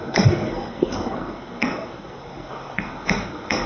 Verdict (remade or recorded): remade